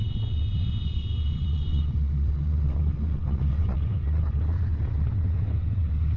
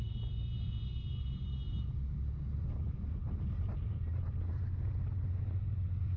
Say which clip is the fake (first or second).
first